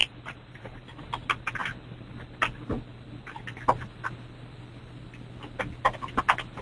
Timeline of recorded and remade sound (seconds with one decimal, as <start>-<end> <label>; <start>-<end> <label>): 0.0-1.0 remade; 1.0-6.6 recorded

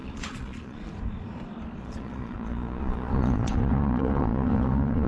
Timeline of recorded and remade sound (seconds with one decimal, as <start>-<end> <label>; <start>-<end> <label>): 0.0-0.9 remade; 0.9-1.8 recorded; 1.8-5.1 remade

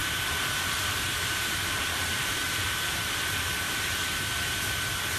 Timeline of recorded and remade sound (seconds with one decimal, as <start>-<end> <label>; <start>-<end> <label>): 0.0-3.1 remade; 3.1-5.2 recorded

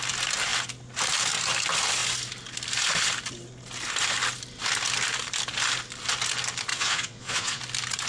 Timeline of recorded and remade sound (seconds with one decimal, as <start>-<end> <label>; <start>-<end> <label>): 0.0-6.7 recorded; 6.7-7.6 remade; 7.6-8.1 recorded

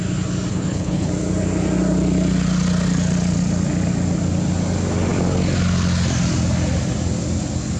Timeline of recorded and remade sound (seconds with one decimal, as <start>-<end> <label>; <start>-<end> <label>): 0.0-0.5 recorded; 0.5-1.1 remade; 1.1-7.8 recorded

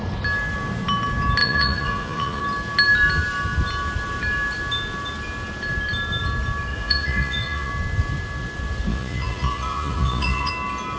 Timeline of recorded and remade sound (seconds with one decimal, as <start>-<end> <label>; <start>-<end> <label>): 0.0-1.4 recorded; 1.4-2.4 remade; 2.4-6.7 recorded; 6.7-7.7 remade; 7.7-8.9 recorded; 8.9-10.5 remade; 10.5-11.0 recorded